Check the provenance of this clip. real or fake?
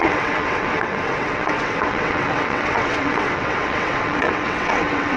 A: fake